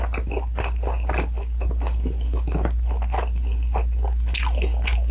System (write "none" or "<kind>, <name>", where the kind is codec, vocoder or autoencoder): none